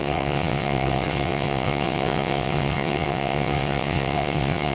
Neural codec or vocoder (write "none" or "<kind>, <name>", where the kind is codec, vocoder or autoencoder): vocoder, WaveNeXt